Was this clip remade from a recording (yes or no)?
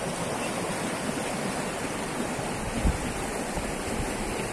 no